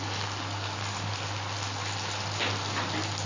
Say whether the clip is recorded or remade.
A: recorded